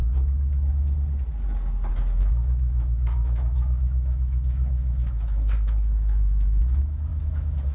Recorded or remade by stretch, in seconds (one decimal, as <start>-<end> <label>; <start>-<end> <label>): 0.0-1.9 recorded; 1.9-7.7 remade